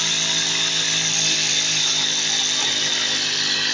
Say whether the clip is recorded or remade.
recorded